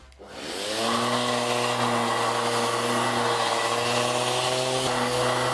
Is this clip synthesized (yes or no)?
no